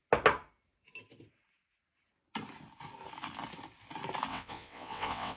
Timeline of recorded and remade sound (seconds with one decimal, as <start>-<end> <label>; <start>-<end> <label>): 0.0-4.3 recorded; 4.3-5.4 remade